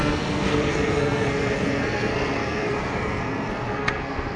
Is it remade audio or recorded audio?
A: remade